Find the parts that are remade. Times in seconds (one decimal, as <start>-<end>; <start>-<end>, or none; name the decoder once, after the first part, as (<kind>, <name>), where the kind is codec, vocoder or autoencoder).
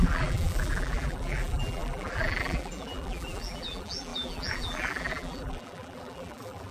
0.0-6.7 (vocoder, BigVGAN v2)